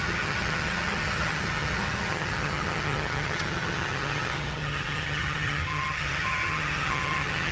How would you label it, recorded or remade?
remade